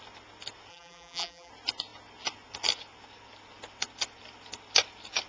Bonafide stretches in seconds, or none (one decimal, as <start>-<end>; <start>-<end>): 0.0-0.7; 1.5-5.3